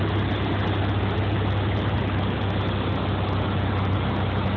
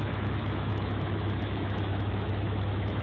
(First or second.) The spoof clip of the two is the second